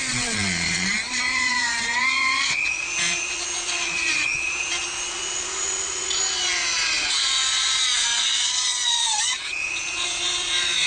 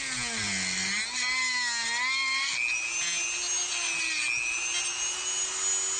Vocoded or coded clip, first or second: first